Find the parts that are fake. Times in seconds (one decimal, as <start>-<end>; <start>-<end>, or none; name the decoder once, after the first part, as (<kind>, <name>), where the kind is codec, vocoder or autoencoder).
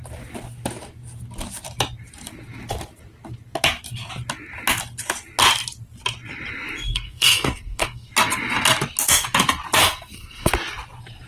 6.9-8.1 (codec, SNAC); 9.8-10.5